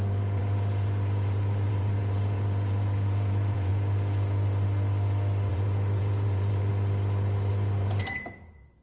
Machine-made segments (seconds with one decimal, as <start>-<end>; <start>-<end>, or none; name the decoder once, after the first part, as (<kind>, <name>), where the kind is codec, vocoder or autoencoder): 0.0-3.7 (vocoder, Vocos); 5.5-6.7; 7.5-8.8